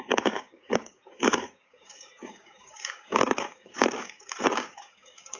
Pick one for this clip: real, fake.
fake